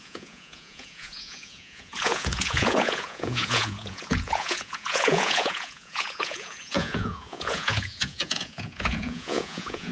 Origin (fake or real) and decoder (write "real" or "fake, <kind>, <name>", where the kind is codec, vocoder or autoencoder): fake, vocoder, Vocos